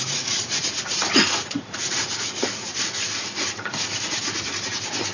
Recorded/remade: remade